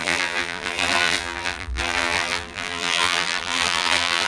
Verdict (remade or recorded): remade